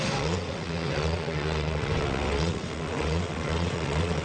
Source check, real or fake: fake